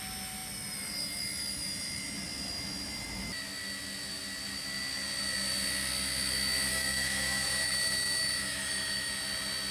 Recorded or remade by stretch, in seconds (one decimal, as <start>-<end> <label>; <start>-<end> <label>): 0.0-6.7 recorded; 6.7-9.1 remade; 9.1-9.7 recorded

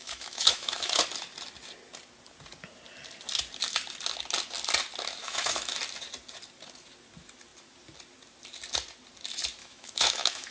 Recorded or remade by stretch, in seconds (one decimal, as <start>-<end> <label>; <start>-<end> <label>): 0.0-1.0 remade; 1.0-5.2 recorded; 5.2-5.8 remade; 5.8-9.6 recorded; 9.6-10.5 remade

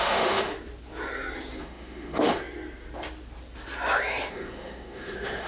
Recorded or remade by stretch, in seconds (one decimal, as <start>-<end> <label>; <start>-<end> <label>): 0.0-0.5 remade; 0.5-1.6 recorded; 1.6-2.4 remade; 2.4-4.3 recorded; 4.3-5.5 remade

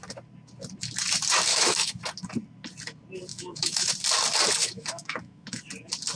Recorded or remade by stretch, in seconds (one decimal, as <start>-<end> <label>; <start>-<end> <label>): 0.0-1.5 recorded; 1.5-2.0 remade; 2.0-3.3 recorded; 3.3-3.9 remade; 3.9-4.6 recorded; 4.6-5.6 remade; 5.6-6.2 recorded